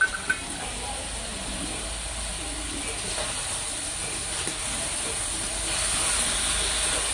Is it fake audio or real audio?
real